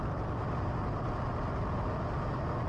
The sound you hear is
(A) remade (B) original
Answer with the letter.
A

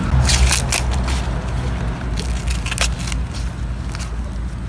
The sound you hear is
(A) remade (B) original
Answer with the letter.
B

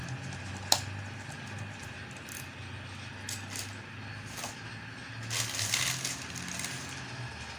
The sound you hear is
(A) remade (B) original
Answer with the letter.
B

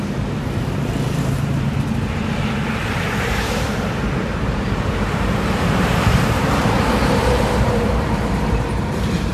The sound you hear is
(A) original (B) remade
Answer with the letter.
B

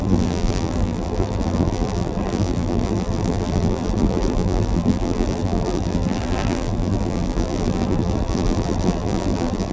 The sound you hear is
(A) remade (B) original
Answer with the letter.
A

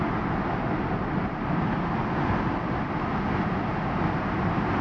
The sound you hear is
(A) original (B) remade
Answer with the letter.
A